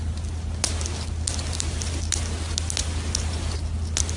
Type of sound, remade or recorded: recorded